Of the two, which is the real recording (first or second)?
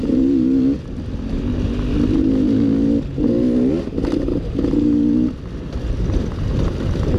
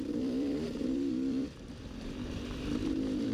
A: first